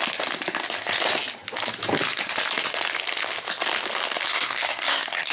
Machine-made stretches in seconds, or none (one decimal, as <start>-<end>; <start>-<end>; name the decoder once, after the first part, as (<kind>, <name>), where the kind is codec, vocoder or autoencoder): 4.3-5.3 (codec, SNAC)